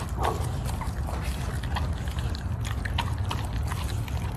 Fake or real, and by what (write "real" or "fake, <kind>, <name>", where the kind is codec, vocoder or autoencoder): real